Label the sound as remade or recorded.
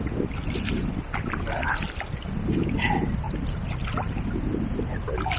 recorded